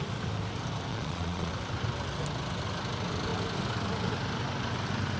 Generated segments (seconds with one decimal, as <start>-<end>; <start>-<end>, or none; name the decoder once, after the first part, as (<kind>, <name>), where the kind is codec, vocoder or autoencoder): 0.9-1.5 (vocoder, Vocos)